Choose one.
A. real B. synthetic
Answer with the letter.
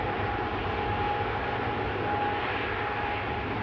A